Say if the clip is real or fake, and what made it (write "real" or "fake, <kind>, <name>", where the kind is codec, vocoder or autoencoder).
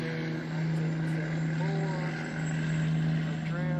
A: real